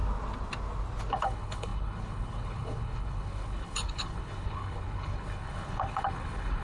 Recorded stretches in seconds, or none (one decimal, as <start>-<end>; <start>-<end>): 0.0-1.1